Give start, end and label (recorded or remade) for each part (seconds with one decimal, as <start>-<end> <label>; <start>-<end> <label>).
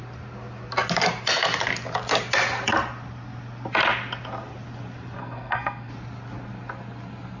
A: 0.0-5.2 recorded; 5.2-5.9 remade; 5.9-7.4 recorded